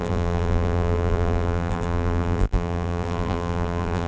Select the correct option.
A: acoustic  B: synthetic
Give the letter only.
B